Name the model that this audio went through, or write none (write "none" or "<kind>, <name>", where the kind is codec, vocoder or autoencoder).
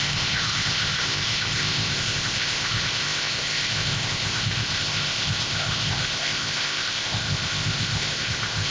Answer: codec, ZipCodec